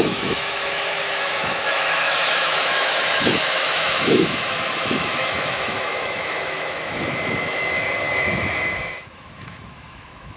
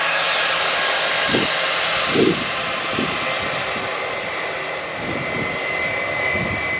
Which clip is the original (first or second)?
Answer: second